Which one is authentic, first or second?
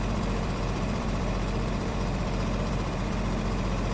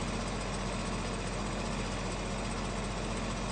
second